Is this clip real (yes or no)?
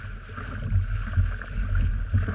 yes